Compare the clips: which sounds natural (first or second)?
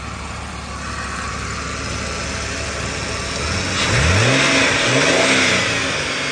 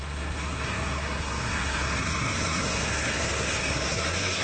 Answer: first